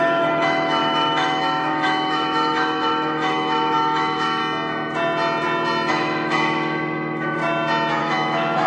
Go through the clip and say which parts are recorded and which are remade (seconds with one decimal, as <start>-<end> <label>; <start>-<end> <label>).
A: 0.0-4.4 remade; 4.4-5.9 recorded; 5.9-7.4 remade; 7.4-8.0 recorded; 8.0-8.7 remade